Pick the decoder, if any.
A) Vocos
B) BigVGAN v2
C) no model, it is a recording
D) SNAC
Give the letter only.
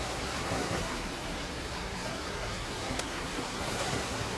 D